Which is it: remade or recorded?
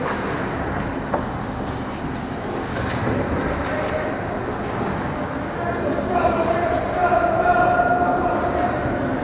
recorded